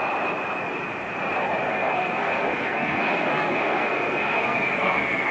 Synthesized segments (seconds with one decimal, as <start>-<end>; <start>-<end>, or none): 1.7-5.3

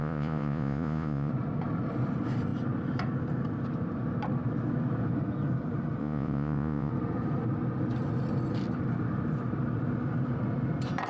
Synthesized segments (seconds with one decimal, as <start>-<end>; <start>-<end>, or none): 0.0-1.3; 6.0-6.9

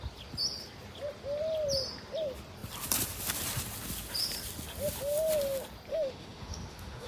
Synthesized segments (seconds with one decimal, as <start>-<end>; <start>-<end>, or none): 5.9-7.1

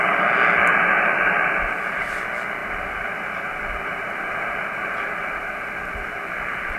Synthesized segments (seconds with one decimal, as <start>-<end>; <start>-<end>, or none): 0.7-2.2; 2.6-5.6

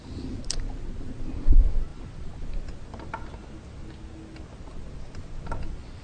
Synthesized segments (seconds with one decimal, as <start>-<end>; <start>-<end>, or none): none

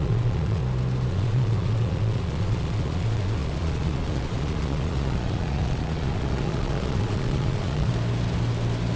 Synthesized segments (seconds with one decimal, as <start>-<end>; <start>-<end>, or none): 0.0-0.6; 1.1-7.9